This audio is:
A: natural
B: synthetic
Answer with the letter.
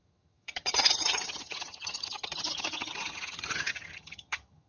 B